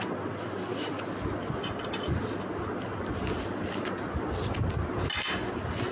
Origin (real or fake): real